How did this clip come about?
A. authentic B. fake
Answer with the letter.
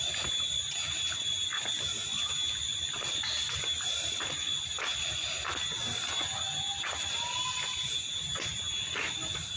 A